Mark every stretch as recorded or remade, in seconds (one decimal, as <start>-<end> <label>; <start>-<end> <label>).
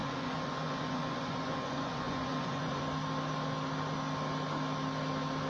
0.0-2.8 remade; 2.8-5.5 recorded